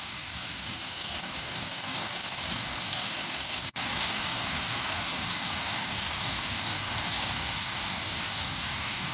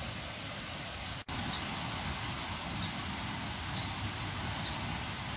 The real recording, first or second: second